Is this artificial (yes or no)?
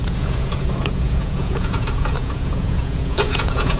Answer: yes